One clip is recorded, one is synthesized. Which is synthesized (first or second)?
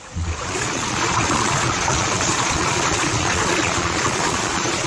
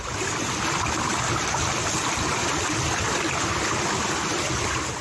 first